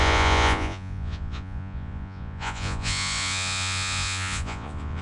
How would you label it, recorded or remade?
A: remade